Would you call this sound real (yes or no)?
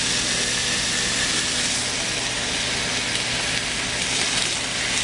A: yes